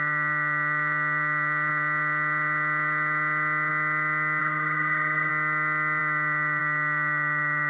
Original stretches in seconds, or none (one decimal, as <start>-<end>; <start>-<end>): 0.0-4.4; 5.3-7.7